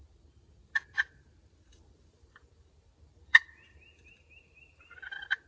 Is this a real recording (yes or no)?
no